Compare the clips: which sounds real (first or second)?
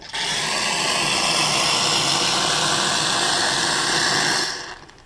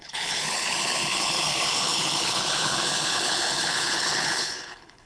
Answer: first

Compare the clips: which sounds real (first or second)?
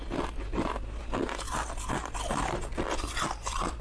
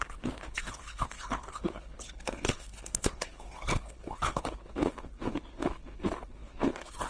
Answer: first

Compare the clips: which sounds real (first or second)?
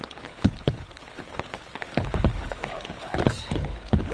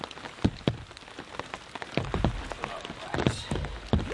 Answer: second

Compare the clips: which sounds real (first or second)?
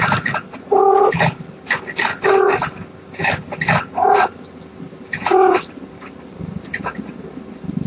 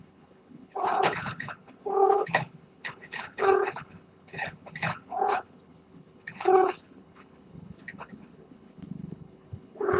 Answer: first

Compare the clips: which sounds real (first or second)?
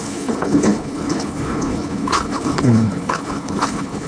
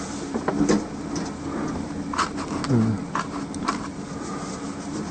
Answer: second